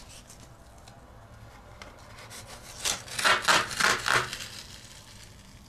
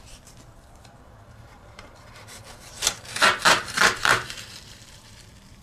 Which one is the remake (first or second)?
second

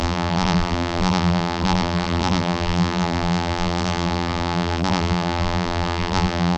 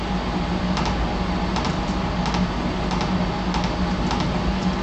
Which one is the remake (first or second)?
first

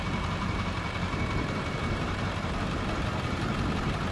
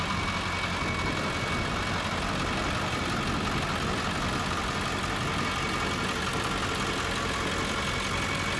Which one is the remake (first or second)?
first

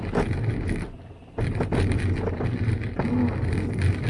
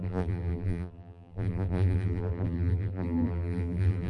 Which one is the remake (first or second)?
second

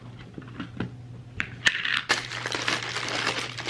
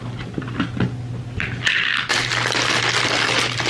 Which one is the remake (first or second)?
first